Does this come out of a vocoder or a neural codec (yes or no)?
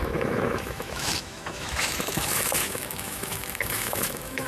yes